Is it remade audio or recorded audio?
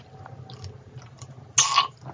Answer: recorded